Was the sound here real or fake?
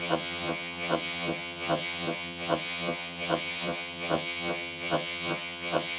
fake